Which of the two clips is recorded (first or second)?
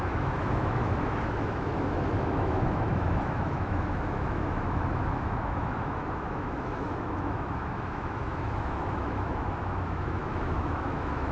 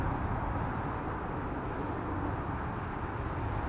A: second